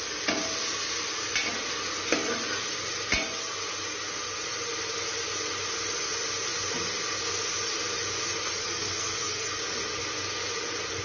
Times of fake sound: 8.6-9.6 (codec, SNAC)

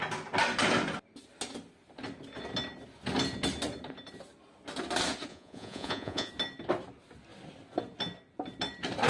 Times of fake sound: 5.3-6.3 (vocoder, Vocos)

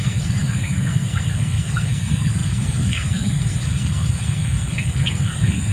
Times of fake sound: 0.0-5.7 (codec, SNAC)

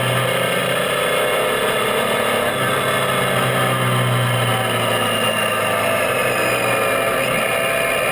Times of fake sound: 0.6-2.5 (vocoder, BigVGAN v2)

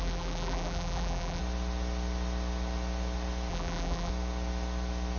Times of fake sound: 0.0-1.4 (vocoder, BigVGAN v2); 3.5-4.1

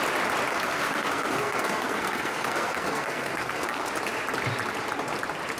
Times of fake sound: 0.5-3.9 (codec, SNAC)

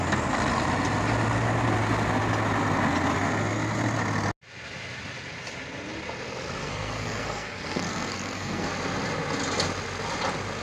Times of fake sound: 6.6-8.7 (codec, SNAC)